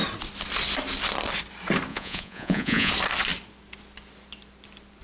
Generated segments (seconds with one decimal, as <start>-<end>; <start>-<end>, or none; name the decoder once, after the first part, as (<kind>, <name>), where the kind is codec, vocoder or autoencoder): 1.9-2.9 (vocoder, Vocos)

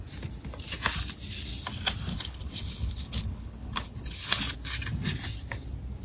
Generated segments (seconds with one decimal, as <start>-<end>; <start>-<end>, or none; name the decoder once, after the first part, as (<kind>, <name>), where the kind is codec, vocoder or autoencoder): 2.1-4.4 (codec, HILCodec)

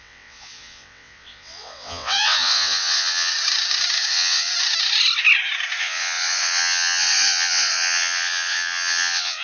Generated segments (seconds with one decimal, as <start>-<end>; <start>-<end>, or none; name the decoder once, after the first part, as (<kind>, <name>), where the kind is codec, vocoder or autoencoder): 0.0-3.3 (vocoder, WaveNeXt); 4.1-4.5; 5.8-9.4

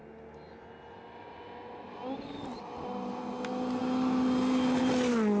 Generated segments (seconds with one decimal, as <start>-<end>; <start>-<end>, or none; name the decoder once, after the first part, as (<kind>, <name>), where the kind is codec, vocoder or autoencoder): none

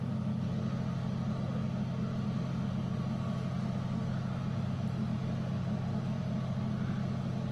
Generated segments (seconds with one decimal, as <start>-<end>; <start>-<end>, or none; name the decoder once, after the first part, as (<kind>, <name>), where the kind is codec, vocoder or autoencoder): none